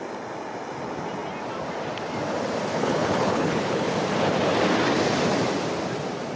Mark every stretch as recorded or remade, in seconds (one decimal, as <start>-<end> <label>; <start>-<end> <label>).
0.0-2.7 recorded; 2.7-3.9 remade; 3.9-6.4 recorded